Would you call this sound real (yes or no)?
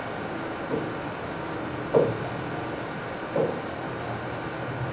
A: yes